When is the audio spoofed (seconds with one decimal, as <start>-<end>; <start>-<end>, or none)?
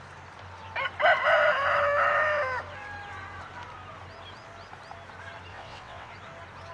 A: 5.5-6.1